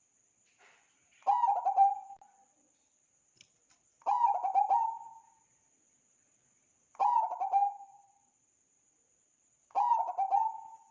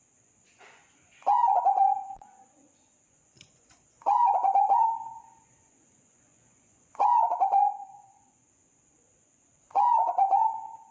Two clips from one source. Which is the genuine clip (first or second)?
first